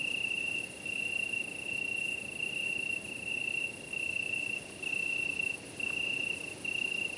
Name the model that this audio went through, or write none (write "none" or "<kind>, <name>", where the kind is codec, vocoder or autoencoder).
none